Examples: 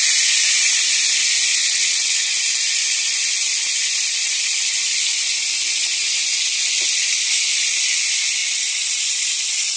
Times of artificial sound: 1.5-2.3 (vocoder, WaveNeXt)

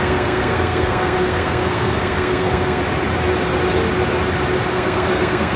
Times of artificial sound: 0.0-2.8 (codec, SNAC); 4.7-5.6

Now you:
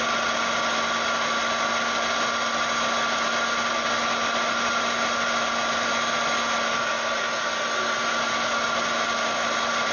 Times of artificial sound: none

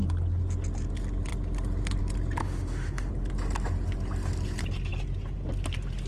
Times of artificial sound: 2.4-3.1 (autoencoder, DAC-VAE)

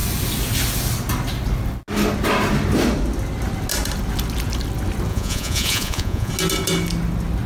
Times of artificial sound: 5.1-6.3 (vocoder, Vocos)

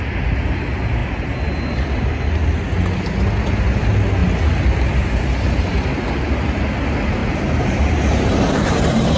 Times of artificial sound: 7.2-8.0 (vocoder, BigVGAN v2)

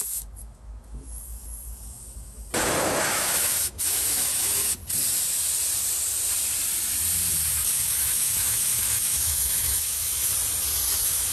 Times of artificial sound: 0.0-4.8 (autoencoder, DAC-VAE); 7.7-10.3; 10.9-11.3